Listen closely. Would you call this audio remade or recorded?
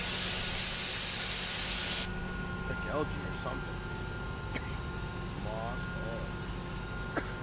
recorded